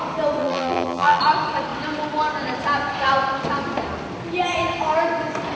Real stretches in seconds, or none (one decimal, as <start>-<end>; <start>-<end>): 0.0-0.4; 1.2-5.6